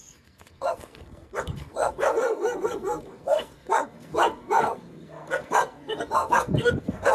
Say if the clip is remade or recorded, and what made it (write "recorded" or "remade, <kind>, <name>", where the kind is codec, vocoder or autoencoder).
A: remade, codec, SNAC